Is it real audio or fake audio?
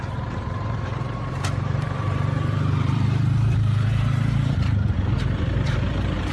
fake